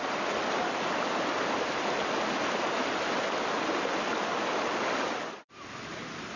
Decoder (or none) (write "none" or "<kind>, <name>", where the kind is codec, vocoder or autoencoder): none